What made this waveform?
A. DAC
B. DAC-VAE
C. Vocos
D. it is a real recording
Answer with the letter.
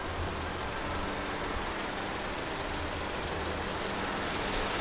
D